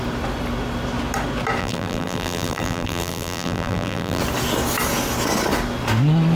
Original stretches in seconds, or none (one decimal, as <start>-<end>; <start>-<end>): 0.0-1.6; 4.2-6.4